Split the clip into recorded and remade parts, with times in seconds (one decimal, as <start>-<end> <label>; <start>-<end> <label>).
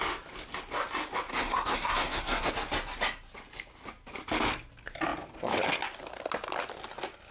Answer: 0.0-1.3 recorded; 1.3-2.5 remade; 2.5-7.3 recorded